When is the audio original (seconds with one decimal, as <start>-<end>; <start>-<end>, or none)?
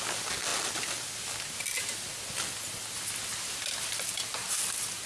0.0-5.1